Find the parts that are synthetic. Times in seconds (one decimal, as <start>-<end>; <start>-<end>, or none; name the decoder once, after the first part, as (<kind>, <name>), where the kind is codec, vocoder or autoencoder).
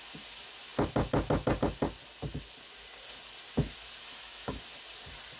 4.0-4.6 (autoencoder, DAC-VAE)